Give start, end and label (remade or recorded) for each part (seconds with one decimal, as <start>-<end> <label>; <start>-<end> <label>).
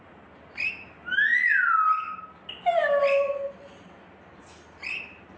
0.0-5.4 recorded